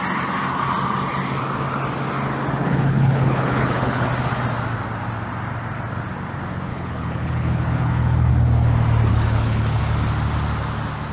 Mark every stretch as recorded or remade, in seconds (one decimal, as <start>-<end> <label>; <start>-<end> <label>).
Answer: 0.0-2.6 recorded; 2.6-4.1 remade; 4.1-6.7 recorded; 6.7-8.3 remade; 8.3-9.1 recorded; 9.1-9.8 remade; 9.8-11.1 recorded